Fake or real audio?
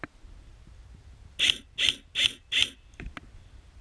real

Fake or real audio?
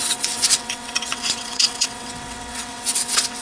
fake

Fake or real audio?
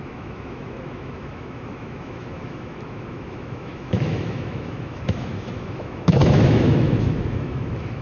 fake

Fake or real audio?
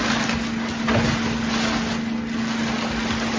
real